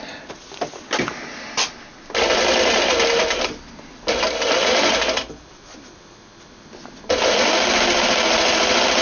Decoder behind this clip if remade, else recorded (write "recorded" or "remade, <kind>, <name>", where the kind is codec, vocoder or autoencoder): recorded